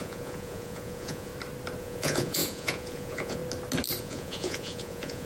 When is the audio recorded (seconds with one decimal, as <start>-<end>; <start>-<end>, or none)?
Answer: 1.3-1.8; 3.4-4.0